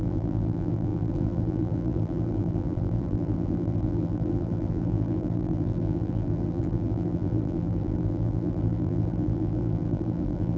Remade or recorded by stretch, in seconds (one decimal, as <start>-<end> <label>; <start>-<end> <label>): 0.0-10.6 remade